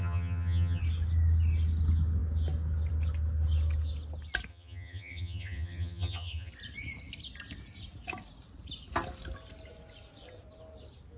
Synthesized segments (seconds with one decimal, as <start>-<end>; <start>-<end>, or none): 0.0-0.8; 4.5-6.5